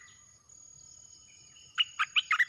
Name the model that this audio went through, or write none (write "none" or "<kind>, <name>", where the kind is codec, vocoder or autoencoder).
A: none